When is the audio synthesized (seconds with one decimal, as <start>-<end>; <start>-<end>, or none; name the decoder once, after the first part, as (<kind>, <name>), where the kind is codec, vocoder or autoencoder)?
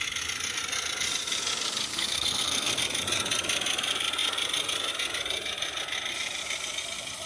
1.9-2.8 (codec, SNAC)